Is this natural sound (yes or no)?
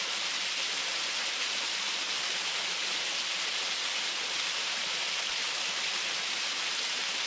yes